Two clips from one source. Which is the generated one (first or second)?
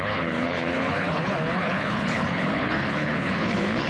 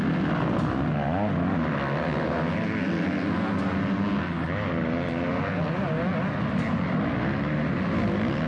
first